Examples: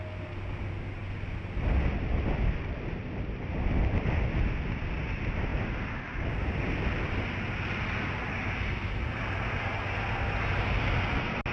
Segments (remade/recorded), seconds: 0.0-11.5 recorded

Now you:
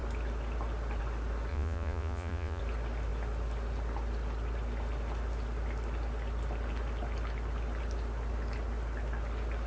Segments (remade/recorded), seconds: 0.0-1.5 recorded; 1.5-2.6 remade; 2.6-9.7 recorded

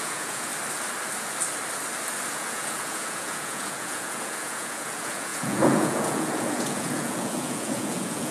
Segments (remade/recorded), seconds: 0.0-0.5 remade; 0.5-2.3 recorded; 2.3-8.3 remade

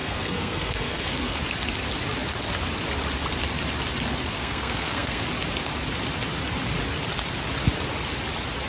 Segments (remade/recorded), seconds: 0.0-1.4 remade; 1.4-4.4 recorded; 4.4-5.2 remade; 5.2-8.7 recorded

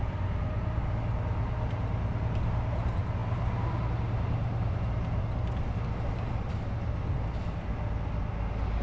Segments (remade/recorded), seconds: 0.0-8.8 recorded